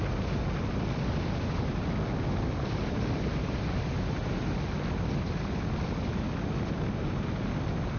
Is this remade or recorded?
recorded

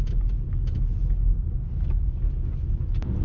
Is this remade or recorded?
recorded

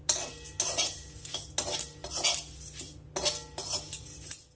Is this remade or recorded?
recorded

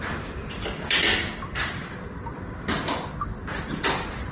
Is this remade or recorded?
recorded